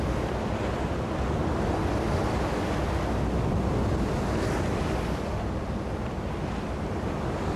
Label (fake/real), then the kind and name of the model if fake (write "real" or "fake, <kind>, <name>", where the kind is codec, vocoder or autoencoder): real